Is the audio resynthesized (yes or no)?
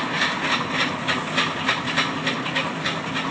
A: no